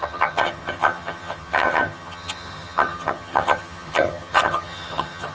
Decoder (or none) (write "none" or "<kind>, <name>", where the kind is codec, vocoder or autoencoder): vocoder, HiFi-GAN